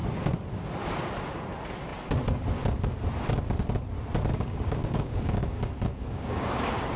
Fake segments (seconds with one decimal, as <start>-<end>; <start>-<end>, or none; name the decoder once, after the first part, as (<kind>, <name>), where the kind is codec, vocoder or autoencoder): 4.3-6.6 (codec, DAC)